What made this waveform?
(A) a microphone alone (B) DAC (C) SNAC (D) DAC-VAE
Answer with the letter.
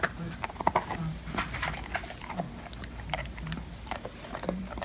A